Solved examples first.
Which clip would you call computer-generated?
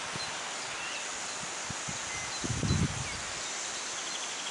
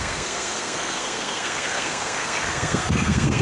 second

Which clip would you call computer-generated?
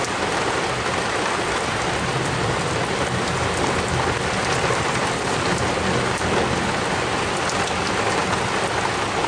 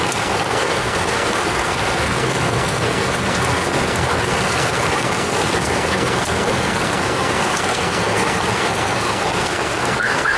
second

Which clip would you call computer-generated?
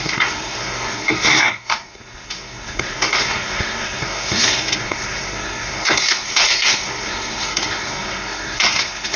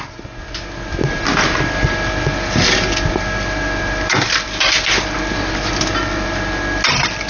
first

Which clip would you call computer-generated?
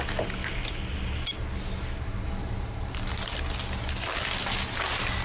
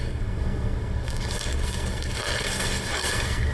second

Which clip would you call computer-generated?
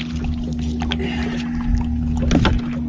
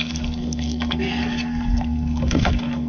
second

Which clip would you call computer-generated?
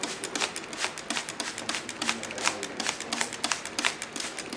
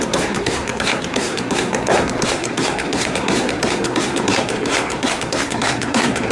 second